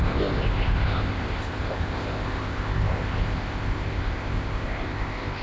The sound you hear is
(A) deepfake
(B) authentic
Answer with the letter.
A